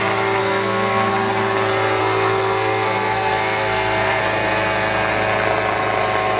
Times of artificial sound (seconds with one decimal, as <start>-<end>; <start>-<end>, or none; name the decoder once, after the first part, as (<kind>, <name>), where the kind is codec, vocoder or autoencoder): 0.4-1.1 (codec, SNAC); 2.0-4.2